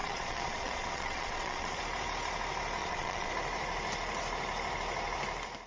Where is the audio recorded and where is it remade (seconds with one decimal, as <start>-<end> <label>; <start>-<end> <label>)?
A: 0.0-1.8 remade; 1.8-2.8 recorded; 2.8-3.3 remade; 3.3-5.7 recorded